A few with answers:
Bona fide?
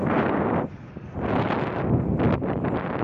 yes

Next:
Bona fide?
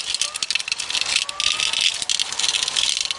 yes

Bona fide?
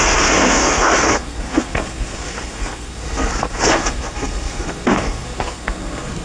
no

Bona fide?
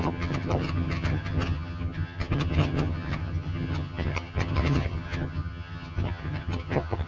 no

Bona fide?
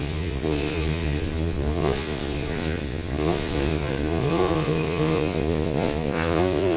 no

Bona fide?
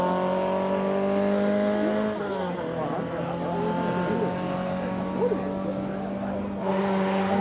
yes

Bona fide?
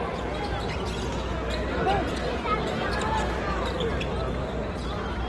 yes